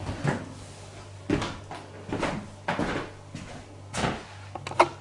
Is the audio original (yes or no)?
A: yes